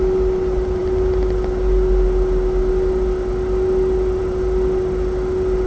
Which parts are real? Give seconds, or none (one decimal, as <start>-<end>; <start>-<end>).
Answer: 0.0-5.7